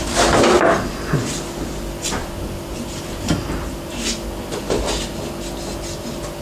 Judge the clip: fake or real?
real